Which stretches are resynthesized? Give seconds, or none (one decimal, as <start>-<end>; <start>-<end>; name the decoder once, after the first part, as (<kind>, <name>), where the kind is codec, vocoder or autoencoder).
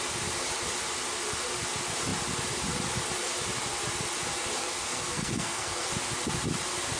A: 4.6-5.9 (codec, SNAC)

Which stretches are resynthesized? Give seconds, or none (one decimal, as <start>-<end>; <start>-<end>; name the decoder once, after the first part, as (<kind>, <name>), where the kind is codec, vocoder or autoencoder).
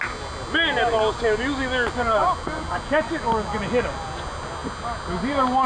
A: none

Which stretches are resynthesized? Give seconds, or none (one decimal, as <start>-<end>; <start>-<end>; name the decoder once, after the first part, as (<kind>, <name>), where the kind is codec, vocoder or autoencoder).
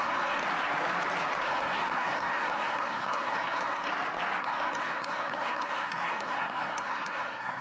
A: 0.0-0.4 (codec, SNAC); 1.4-3.9; 4.4-7.6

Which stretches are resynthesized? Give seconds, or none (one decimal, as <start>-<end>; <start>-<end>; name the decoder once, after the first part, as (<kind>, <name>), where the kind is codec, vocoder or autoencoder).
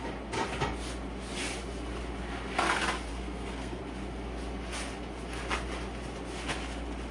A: 3.1-3.8 (codec, SNAC)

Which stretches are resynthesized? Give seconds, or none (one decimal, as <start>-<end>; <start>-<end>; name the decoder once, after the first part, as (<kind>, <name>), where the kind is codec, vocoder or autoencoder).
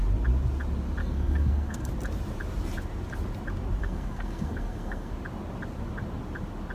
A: 1.0-1.9 (codec, SNAC); 3.8-5.1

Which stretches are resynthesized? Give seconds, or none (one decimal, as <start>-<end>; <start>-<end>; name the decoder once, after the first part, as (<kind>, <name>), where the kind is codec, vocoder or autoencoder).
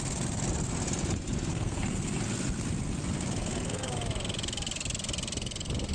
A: 1.5-2.2 (codec, SNAC); 3.4-3.9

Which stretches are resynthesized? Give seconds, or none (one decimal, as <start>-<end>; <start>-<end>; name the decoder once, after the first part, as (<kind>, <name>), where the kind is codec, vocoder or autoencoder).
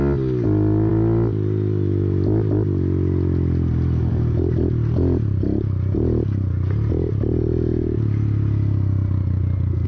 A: none